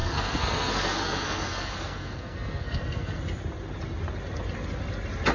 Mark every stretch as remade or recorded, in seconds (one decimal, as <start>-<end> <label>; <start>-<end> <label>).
0.0-3.2 remade; 3.2-5.3 recorded